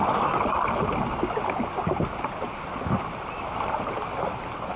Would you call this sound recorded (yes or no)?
yes